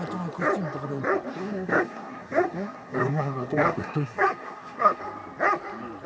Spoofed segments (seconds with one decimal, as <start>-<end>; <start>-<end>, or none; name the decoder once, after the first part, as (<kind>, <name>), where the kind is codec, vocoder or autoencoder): 1.3-5.0 (codec, SNAC)